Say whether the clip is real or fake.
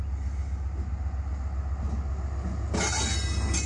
real